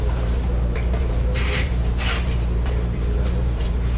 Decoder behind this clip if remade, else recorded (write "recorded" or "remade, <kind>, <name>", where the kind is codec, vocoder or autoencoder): remade, vocoder, BigVGAN v2